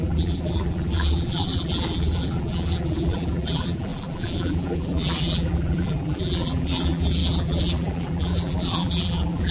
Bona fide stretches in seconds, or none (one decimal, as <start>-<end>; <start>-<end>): none